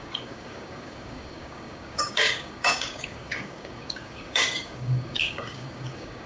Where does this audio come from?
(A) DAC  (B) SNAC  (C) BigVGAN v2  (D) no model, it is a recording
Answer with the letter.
A